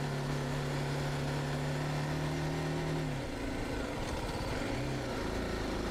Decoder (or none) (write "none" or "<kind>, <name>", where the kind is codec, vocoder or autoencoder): none